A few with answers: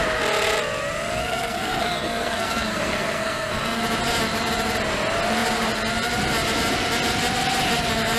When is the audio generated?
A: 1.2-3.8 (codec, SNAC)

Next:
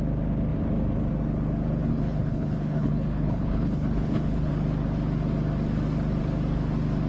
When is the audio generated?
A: 1.9-4.5 (codec, HILCodec)

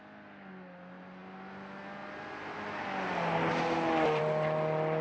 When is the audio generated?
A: none

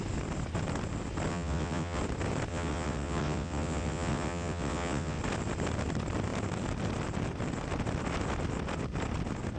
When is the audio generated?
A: 1.3-2.0 (vocoder, WaveNeXt); 2.5-5.2

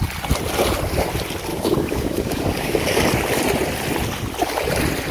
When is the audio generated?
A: 1.5-3.0 (codec, DAC)

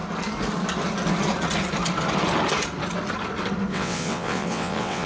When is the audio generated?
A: 3.7-5.1 (vocoder, WaveNeXt)

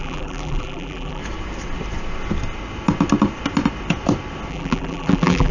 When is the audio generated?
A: 0.0-1.2 (vocoder, BigVGAN v2); 4.5-5.5

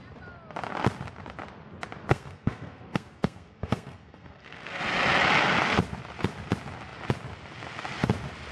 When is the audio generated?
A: 2.1-4.8 (codec, SNAC)